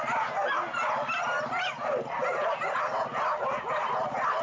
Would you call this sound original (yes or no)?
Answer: yes